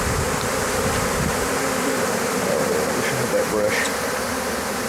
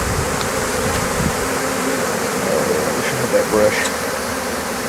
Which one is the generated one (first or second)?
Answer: first